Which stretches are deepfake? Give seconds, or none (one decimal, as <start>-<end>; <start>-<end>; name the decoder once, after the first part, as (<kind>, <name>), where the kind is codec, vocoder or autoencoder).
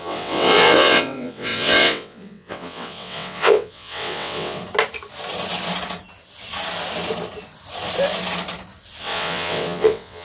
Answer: 0.0-4.6 (vocoder, WaveNeXt); 9.0-10.2